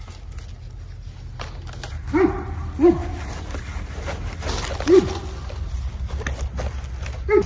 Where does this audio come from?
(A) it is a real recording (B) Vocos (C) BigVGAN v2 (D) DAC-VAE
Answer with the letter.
A